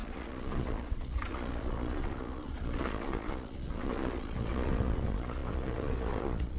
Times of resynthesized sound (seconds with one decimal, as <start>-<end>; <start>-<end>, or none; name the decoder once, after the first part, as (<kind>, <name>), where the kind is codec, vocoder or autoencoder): 0.0-6.6 (vocoder, Vocos)